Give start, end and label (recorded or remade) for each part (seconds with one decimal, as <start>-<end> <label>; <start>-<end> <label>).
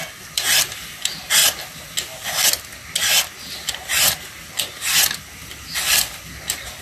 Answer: 0.0-1.4 remade; 1.4-5.3 recorded; 5.3-6.8 remade